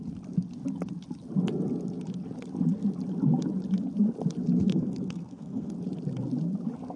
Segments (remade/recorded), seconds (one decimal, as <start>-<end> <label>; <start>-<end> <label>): 0.0-4.7 recorded; 4.7-5.7 remade; 5.7-7.0 recorded